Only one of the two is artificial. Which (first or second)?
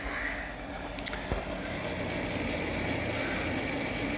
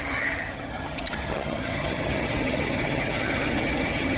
second